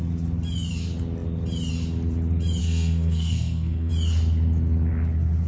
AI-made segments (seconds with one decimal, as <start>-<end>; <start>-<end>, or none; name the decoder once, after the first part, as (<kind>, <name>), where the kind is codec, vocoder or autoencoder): 2.6-3.9 (codec, SNAC)